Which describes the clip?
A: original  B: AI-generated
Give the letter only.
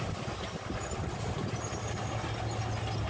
A